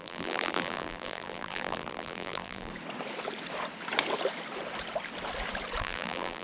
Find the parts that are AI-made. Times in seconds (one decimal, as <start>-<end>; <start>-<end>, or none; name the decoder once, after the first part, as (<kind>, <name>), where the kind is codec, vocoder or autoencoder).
0.0-2.7 (vocoder, BigVGAN v2); 5.8-6.4